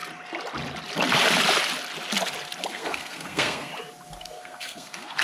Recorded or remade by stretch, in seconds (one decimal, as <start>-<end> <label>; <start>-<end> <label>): 0.0-2.7 recorded; 2.7-3.7 remade; 3.7-4.2 recorded; 4.2-5.2 remade